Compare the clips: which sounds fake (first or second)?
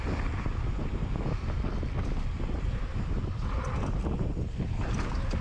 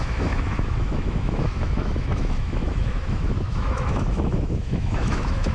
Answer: second